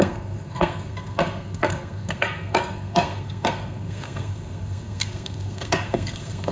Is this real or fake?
fake